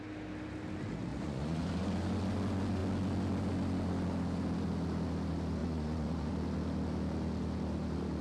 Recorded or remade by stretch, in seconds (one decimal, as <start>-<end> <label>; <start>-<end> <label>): 0.0-1.1 recorded; 1.1-1.7 remade; 1.7-5.6 recorded; 5.6-6.3 remade; 6.3-8.2 recorded